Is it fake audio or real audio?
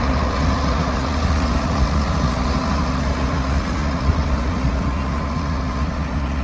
fake